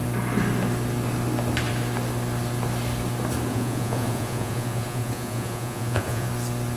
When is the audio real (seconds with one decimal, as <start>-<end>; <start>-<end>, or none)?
0.0-3.5; 6.3-6.8